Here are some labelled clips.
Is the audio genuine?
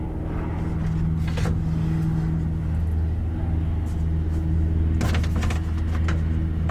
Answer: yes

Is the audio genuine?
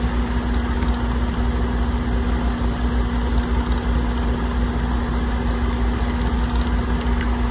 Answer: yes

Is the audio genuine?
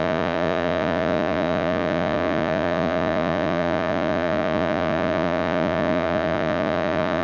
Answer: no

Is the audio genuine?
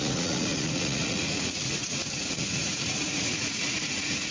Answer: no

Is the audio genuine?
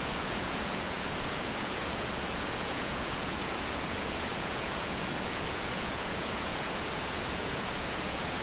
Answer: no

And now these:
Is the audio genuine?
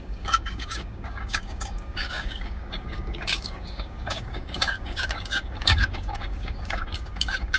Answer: no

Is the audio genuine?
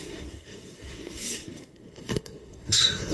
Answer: no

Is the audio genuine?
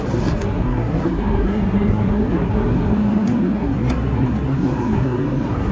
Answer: no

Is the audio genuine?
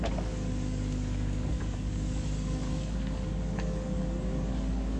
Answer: no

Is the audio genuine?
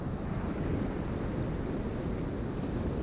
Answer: yes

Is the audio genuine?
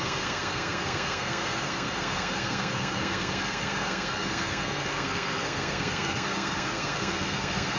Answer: no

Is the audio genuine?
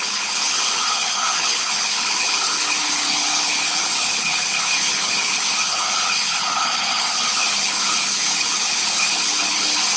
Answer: no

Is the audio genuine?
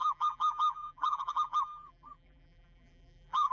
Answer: no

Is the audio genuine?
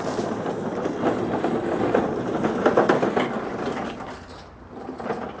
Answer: yes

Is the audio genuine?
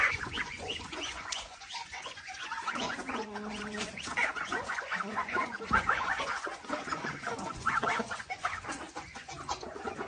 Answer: no